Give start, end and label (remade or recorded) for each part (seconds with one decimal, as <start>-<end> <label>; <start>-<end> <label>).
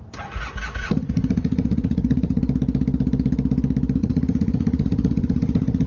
0.0-0.8 recorded; 0.8-2.4 remade; 2.4-4.0 recorded; 4.0-5.9 remade